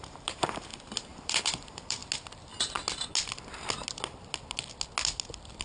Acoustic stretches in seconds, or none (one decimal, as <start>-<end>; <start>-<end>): 2.0-5.6